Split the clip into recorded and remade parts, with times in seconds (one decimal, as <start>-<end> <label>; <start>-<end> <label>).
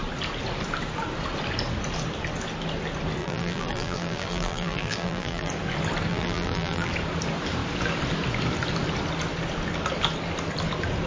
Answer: 0.0-3.2 recorded; 3.2-5.5 remade; 5.5-6.1 recorded; 6.1-6.9 remade; 6.9-11.1 recorded